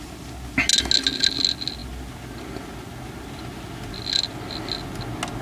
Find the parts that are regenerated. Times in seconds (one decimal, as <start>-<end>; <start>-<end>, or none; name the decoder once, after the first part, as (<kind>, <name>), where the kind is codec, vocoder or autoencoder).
none